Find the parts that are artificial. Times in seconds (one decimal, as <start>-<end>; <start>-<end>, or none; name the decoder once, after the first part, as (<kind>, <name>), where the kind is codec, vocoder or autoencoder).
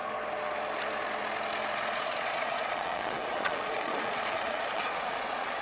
1.9-5.6 (vocoder, Vocos)